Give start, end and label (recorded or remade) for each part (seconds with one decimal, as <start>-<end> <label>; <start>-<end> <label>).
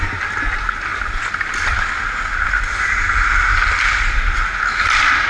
0.0-5.3 recorded